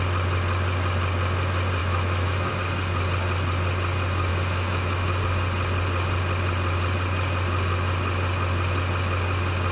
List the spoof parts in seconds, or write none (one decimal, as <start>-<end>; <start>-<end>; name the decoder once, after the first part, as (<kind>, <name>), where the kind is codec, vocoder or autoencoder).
1.8-2.5 (autoencoder, DAC-VAE); 4.3-5.2